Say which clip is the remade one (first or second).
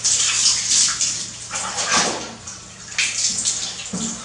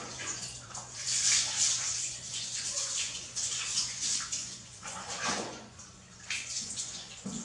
second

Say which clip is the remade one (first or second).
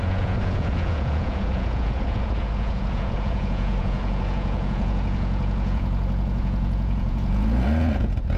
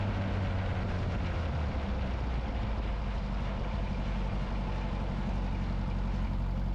first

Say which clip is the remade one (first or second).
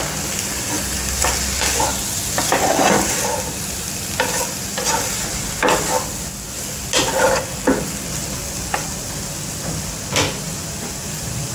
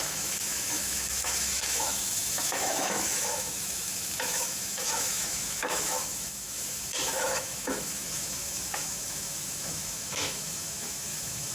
second